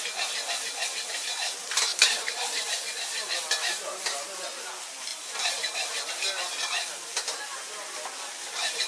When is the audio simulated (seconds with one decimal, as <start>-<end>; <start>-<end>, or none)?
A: 1.9-2.8; 5.1-6.1